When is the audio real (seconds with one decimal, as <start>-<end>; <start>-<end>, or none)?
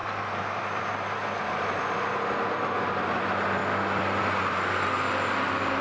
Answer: 0.0-3.6; 4.2-5.8